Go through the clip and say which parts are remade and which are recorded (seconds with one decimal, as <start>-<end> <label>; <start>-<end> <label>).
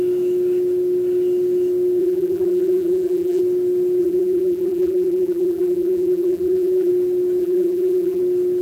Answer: 0.0-2.0 recorded; 2.0-3.4 remade; 3.4-4.0 recorded; 4.0-6.9 remade; 6.9-7.4 recorded; 7.4-8.2 remade; 8.2-8.6 recorded